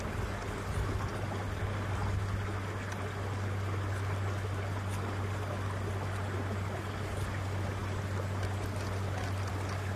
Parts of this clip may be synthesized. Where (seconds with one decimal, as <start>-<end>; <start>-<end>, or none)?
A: none